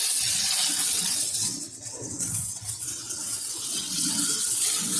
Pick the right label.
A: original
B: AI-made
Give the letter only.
B